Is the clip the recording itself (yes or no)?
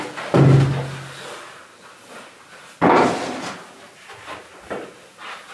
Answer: yes